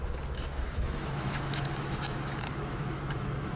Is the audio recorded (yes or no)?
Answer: no